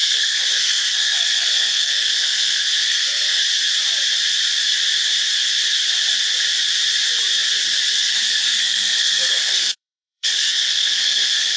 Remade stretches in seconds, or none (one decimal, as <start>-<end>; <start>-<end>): 0.0-3.4; 7.9-11.6